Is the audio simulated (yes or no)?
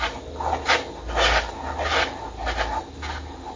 no